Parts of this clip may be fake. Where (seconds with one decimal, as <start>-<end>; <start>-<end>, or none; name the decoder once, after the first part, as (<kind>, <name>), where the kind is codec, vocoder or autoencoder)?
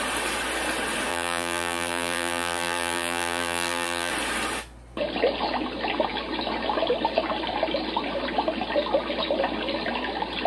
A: 1.1-4.1 (vocoder, BigVGAN v2)